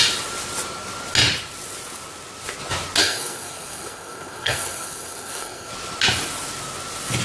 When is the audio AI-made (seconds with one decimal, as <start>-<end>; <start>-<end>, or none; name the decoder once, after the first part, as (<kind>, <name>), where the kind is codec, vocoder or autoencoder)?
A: 3.0-5.7 (codec, SNAC)